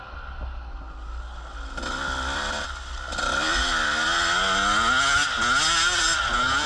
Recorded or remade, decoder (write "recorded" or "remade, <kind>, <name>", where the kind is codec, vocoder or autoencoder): recorded